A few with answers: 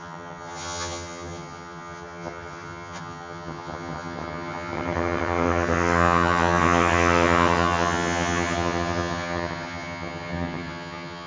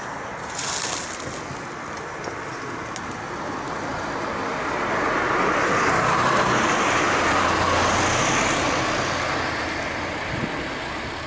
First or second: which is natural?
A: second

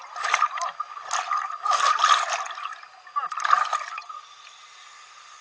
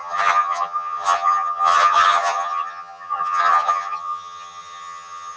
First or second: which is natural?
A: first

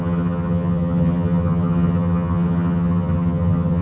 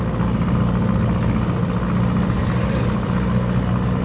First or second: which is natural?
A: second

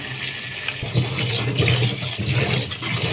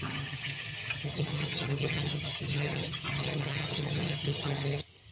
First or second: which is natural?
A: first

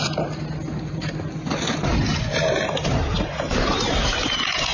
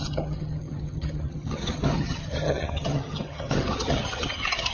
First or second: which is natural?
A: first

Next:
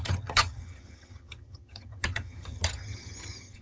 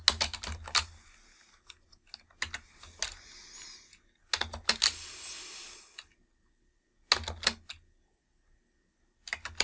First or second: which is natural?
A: second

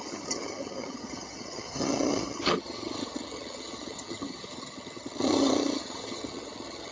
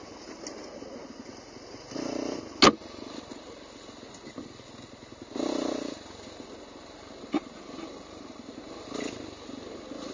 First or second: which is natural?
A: second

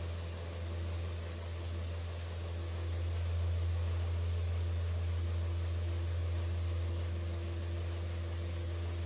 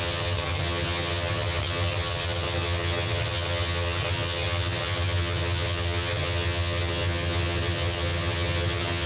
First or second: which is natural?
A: first